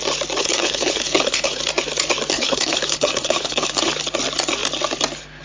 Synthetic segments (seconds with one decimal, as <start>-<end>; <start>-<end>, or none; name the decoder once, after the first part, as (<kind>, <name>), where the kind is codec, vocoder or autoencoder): 0.4-1.6 (codec, HILCodec); 2.3-3.8